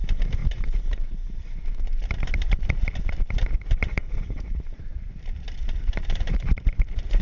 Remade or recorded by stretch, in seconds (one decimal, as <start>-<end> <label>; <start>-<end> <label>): 0.0-7.2 remade

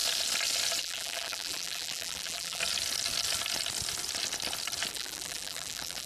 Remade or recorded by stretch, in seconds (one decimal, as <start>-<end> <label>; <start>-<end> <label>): 0.0-0.8 recorded; 0.8-2.6 remade; 2.6-4.9 recorded; 4.9-6.1 remade